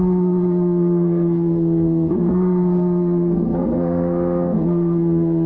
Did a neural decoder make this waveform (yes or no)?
yes